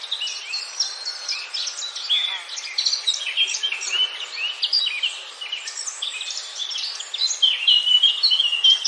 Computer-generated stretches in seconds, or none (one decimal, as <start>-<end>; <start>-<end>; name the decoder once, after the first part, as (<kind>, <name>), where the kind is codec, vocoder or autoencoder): none